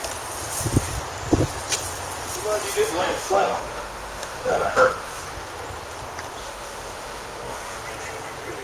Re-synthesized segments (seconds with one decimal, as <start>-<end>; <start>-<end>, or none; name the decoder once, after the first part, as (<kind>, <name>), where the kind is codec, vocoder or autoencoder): 3.0-5.2 (autoencoder, DAC-VAE); 6.4-7.8

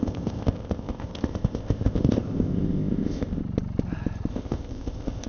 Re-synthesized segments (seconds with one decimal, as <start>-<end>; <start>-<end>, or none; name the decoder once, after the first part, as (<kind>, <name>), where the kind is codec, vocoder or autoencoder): 0.0-3.4 (codec, ZipCodec); 4.3-5.3

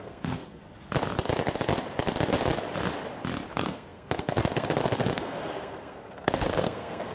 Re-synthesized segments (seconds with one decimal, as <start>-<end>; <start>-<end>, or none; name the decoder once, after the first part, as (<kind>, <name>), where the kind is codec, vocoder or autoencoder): 0.0-0.6 (codec, SNAC); 3.5-7.1